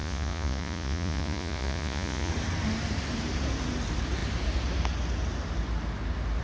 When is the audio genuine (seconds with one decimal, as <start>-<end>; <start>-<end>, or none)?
2.3-6.4